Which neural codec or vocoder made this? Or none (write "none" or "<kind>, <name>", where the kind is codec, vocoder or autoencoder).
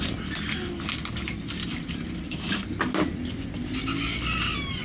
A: none